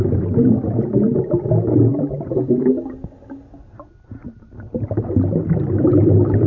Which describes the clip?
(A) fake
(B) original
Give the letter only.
B